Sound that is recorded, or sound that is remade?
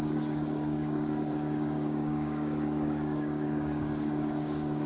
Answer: remade